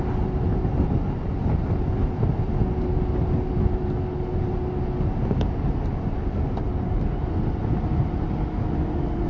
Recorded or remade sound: recorded